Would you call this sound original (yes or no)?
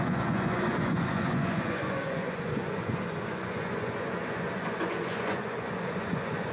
no